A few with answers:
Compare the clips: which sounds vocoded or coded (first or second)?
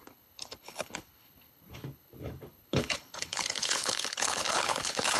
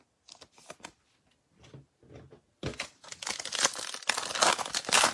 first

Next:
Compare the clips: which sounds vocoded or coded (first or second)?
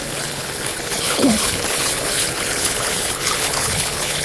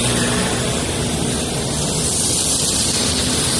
first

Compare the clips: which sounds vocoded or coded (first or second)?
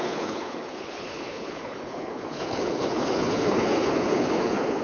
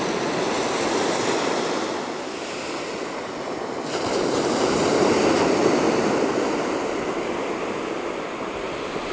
first